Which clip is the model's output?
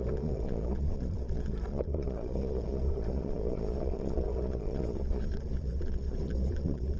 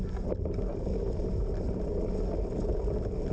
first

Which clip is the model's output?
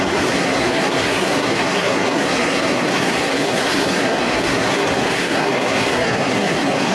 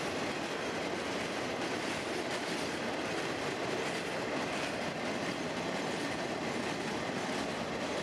first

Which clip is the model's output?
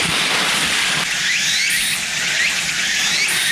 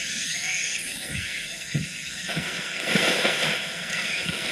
second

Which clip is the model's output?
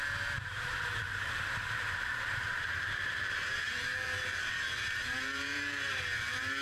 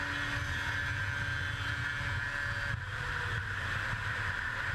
first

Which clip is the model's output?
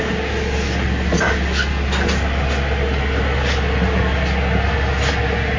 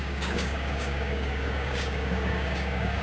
second